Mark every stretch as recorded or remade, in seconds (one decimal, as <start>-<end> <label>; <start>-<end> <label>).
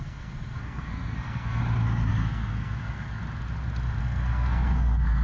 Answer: 0.0-1.6 remade; 1.6-2.1 recorded; 2.1-3.2 remade; 3.2-4.0 recorded; 4.0-5.2 remade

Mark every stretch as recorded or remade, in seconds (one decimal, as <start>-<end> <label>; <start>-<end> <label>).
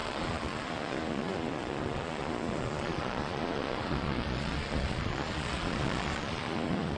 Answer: 0.0-7.0 remade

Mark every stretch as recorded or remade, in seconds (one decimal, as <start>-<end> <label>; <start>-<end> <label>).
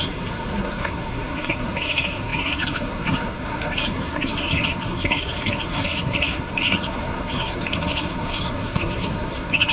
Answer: 0.0-9.7 remade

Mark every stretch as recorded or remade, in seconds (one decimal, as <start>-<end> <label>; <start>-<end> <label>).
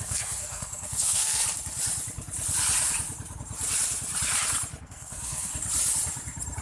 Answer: 0.0-1.4 remade; 1.4-4.8 recorded; 4.8-5.5 remade; 5.5-6.6 recorded